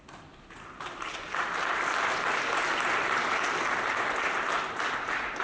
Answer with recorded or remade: recorded